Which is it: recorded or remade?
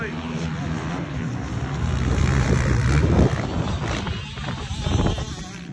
recorded